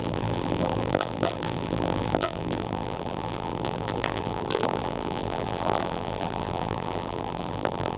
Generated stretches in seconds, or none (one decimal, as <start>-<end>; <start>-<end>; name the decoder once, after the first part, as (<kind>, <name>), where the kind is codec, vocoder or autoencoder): 0.0-8.0 (vocoder, BigVGAN v2)